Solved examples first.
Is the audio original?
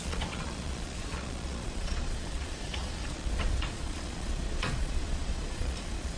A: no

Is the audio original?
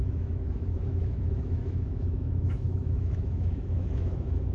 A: no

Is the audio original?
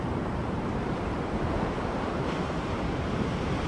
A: no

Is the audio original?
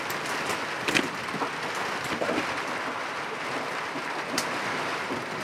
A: yes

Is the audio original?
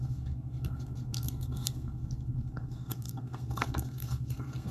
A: no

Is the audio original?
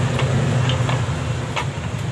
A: yes